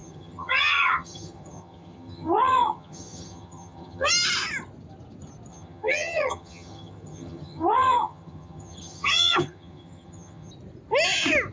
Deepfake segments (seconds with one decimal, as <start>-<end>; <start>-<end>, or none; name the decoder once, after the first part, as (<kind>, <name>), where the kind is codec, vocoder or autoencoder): 0.0-4.1 (vocoder, HiFi-GAN); 5.5-10.5